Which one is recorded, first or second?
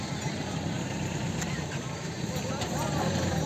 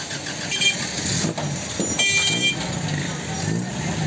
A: second